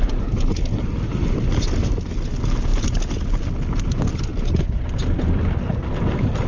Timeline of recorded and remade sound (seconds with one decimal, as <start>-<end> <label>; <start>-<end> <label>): 0.0-6.5 recorded